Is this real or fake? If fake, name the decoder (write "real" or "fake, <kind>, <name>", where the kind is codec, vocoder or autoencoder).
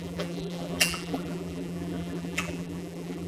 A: fake, vocoder, BigVGAN v2